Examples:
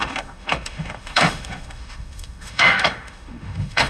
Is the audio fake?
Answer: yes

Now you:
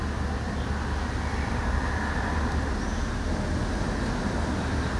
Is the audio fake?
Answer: no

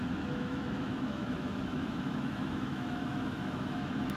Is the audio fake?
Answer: yes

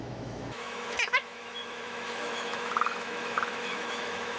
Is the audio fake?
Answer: yes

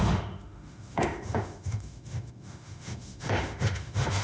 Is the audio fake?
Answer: yes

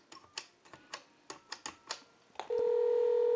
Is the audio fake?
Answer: no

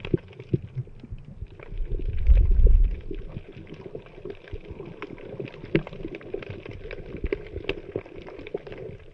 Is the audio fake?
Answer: no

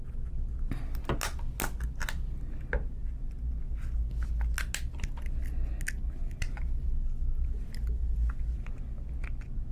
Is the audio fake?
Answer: no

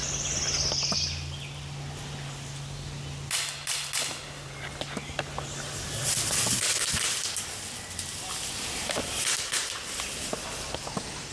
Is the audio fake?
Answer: no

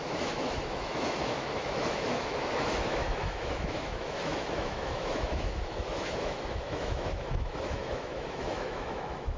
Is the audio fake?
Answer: yes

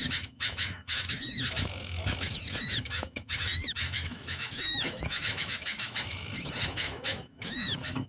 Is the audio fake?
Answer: yes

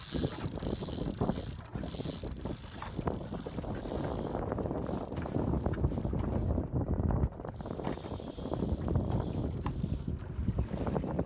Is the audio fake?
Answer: no